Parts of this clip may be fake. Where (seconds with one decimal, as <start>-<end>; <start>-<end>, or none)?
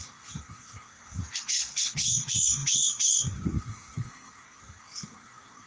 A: 0.0-5.7